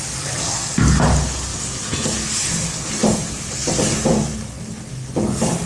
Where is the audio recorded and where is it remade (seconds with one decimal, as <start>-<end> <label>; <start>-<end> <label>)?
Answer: 0.0-5.7 recorded